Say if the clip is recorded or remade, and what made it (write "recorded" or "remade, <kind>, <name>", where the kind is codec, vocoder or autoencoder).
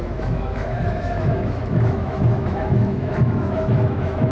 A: remade, autoencoder, DAC-VAE